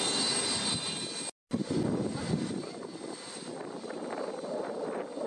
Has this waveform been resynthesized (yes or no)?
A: no